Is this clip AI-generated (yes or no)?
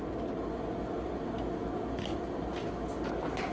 no